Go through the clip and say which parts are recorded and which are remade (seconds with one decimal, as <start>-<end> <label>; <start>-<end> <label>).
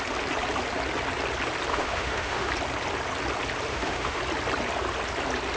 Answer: 0.0-1.7 recorded; 1.7-2.5 remade; 2.5-3.7 recorded; 3.7-4.2 remade; 4.2-5.6 recorded